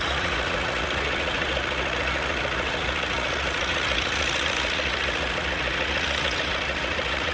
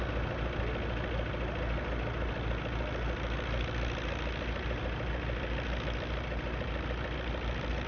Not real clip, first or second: first